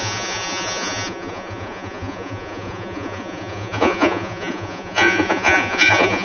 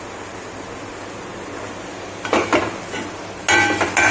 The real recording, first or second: second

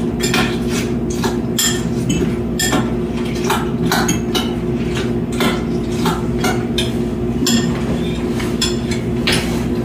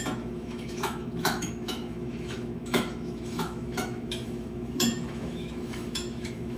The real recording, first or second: first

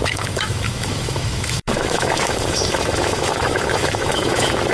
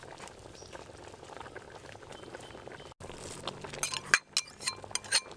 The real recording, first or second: second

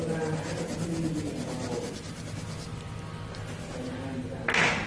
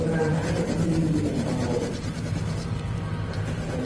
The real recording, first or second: first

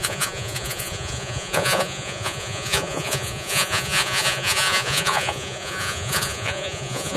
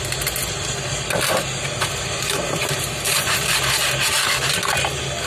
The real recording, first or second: second